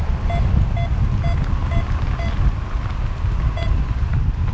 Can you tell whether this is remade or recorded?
recorded